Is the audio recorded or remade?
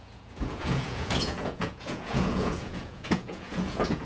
remade